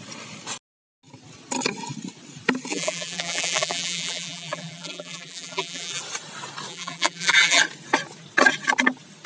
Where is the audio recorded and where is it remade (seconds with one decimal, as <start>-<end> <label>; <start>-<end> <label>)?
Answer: 0.0-2.7 recorded; 2.7-6.0 remade; 6.0-6.7 recorded; 6.7-7.6 remade; 7.6-9.3 recorded